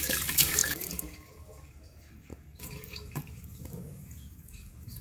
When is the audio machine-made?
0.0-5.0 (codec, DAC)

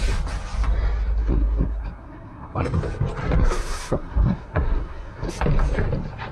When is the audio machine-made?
1.2-2.8 (codec, SNAC); 3.2-5.3

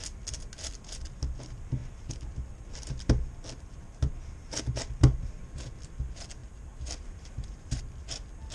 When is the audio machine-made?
6.4-7.8 (vocoder, BigVGAN v2)

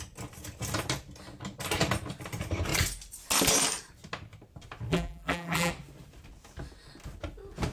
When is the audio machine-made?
4.9-5.7 (vocoder, BigVGAN v2)

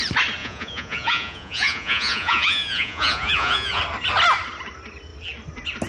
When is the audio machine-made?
0.4-3.8 (vocoder, Vocos)

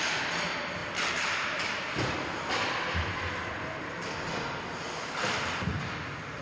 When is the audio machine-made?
none